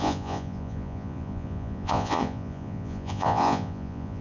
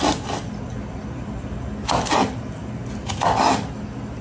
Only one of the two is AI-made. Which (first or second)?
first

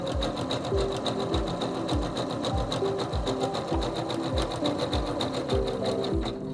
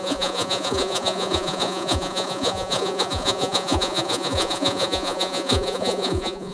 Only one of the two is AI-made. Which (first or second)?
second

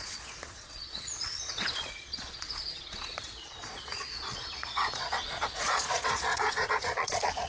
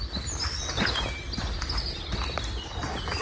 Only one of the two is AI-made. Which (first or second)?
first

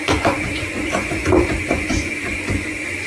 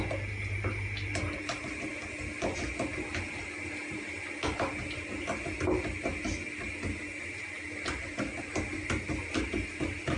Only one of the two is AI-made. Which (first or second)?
first